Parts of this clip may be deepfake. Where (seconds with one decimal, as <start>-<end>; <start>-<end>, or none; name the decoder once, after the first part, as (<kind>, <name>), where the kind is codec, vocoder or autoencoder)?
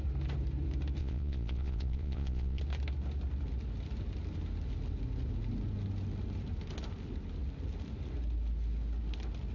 1.0-2.6 (vocoder, Vocos)